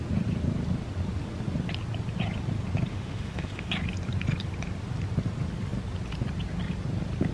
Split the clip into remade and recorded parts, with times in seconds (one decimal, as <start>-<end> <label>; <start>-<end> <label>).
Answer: 0.0-2.9 recorded; 2.9-3.7 remade; 3.7-7.3 recorded